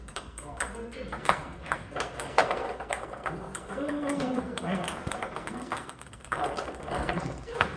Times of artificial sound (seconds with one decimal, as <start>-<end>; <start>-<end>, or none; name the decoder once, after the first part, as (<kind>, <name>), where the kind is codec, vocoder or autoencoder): 0.0-7.8 (codec, SNAC)